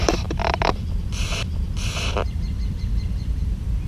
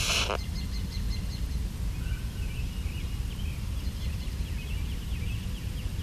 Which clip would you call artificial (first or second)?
first